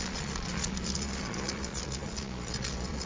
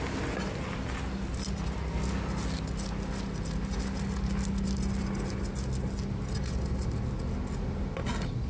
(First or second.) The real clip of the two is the second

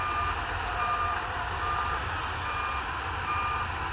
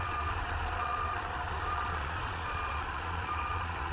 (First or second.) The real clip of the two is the first